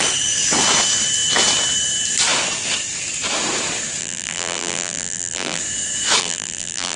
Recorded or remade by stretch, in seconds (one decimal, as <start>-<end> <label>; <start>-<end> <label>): 0.0-4.0 recorded; 4.0-5.6 remade; 5.6-6.2 recorded; 6.2-7.0 remade